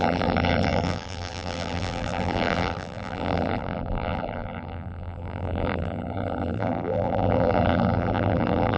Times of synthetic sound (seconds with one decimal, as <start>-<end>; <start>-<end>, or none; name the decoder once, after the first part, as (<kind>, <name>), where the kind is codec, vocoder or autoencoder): 0.0-8.8 (vocoder, BigVGAN v2)